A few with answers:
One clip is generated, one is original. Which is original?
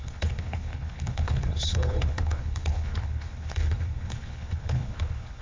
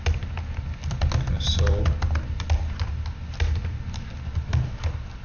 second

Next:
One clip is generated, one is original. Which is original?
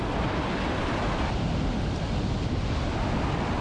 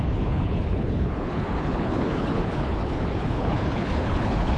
first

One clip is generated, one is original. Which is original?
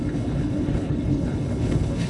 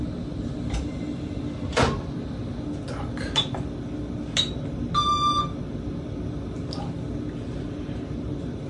second